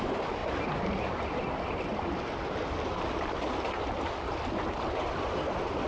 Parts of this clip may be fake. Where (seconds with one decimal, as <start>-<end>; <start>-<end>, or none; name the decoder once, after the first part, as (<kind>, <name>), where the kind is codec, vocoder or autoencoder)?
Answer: none